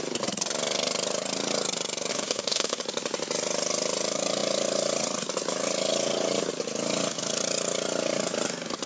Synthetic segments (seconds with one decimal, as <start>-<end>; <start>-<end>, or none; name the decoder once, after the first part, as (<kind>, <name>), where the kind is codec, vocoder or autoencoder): 2.1-2.8 (codec, DAC)